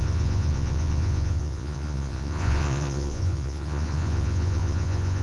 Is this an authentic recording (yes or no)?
no